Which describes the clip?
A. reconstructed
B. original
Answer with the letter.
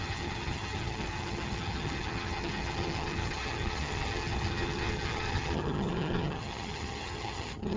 A